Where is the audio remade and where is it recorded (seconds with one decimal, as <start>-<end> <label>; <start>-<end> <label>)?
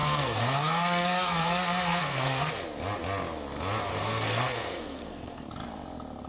0.0-2.5 remade; 2.5-3.9 recorded; 3.9-5.5 remade; 5.5-6.3 recorded